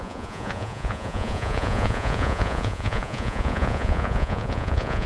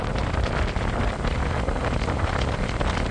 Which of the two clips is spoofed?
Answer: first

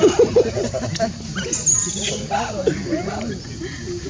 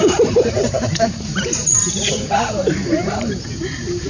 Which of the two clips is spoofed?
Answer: second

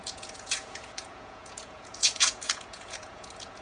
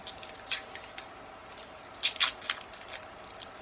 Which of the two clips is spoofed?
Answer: first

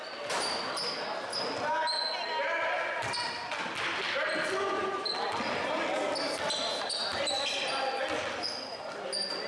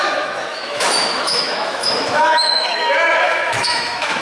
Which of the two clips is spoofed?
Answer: second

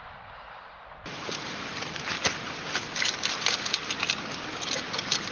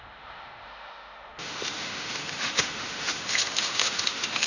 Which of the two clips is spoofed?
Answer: second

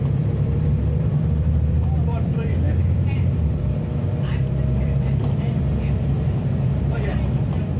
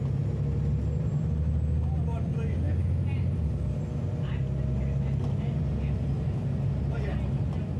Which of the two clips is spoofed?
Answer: first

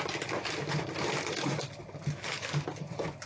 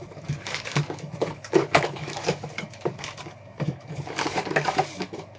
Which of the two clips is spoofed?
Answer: second